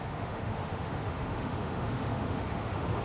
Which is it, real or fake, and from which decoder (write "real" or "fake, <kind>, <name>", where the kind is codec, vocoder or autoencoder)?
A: fake, autoencoder, DAC-VAE